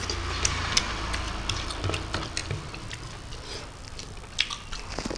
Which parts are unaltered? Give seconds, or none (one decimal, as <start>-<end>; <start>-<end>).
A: 0.0-5.2